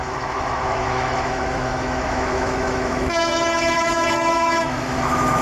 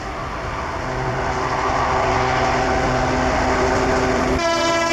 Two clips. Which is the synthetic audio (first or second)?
first